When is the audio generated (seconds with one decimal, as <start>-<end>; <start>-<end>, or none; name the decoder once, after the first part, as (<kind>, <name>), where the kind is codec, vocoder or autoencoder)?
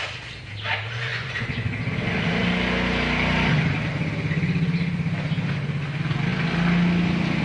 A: 1.1-1.7 (vocoder, Vocos)